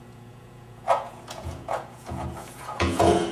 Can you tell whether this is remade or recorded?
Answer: remade